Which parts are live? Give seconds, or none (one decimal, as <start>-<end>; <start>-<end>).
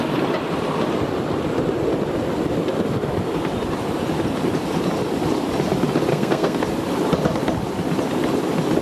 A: 0.0-6.1; 6.6-8.8